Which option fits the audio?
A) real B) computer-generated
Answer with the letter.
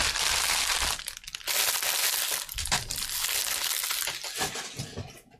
A